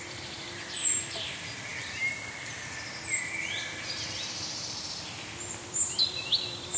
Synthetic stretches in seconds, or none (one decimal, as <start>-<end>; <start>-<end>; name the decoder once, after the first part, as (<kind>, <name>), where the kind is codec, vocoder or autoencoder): 0.0-6.8 (vocoder, BigVGAN v2)